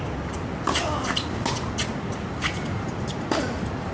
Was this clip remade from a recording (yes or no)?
no